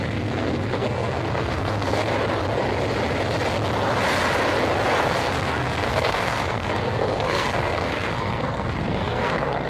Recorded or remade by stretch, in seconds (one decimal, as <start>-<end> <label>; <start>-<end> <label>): 0.0-2.1 remade; 2.1-5.0 recorded; 5.0-9.7 remade